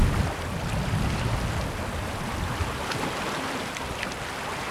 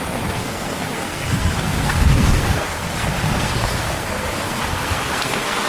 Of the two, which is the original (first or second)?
first